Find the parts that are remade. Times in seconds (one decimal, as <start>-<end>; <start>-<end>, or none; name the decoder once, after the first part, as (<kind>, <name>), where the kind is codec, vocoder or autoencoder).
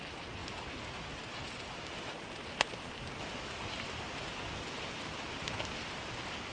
none